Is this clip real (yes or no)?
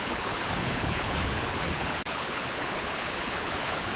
no